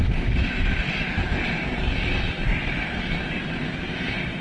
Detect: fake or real real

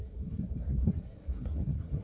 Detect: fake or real fake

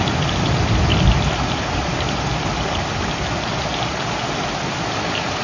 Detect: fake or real real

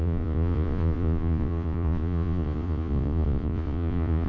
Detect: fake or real fake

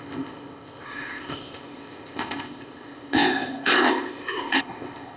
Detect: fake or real fake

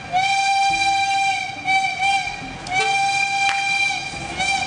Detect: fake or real real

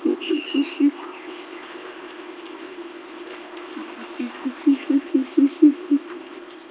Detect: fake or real fake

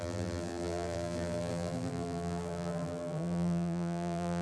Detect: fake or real fake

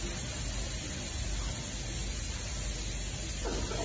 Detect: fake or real real